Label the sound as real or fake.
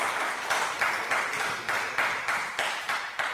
fake